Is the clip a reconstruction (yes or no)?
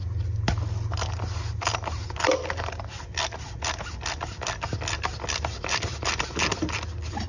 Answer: no